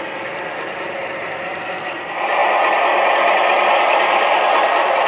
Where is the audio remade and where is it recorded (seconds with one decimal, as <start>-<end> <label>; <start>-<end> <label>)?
0.0-2.4 remade; 2.4-3.9 recorded; 3.9-5.1 remade